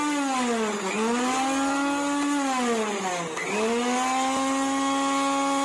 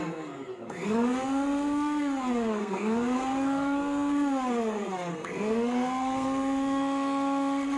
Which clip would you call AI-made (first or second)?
second